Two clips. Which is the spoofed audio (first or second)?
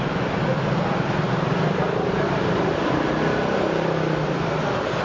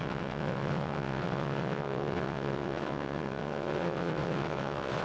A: second